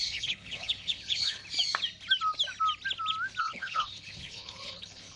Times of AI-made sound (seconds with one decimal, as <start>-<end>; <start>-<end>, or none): 0.0-1.4; 3.4-5.2